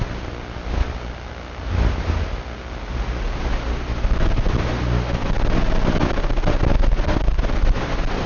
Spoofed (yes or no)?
no